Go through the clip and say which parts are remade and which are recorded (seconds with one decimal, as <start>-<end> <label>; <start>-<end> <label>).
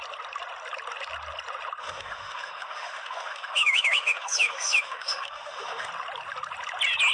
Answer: 0.0-1.8 recorded; 1.8-5.9 remade; 5.9-7.1 recorded